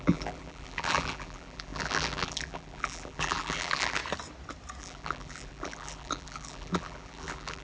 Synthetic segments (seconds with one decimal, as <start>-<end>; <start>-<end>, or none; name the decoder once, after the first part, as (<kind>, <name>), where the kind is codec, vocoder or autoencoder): 0.0-4.0 (vocoder, BigVGAN v2); 4.8-7.6